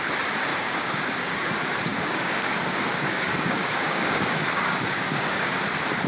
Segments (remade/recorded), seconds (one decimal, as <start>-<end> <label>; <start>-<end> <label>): 0.0-0.5 recorded; 0.5-1.5 remade; 1.5-1.9 recorded; 1.9-5.6 remade; 5.6-6.1 recorded